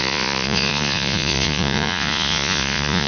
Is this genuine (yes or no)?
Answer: no